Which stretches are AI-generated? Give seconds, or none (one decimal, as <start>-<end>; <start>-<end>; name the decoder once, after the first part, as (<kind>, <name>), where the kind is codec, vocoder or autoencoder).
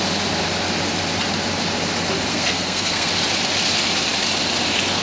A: 2.3-3.1 (codec, SNAC)